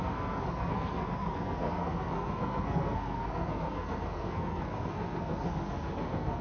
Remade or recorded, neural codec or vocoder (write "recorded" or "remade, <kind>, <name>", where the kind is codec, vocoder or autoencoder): remade, codec, SNAC